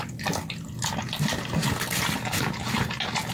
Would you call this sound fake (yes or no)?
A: no